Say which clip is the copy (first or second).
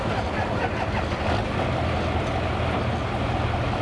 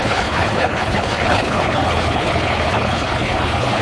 second